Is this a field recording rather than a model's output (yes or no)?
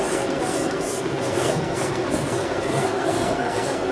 no